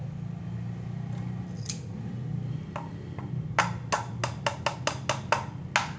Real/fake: real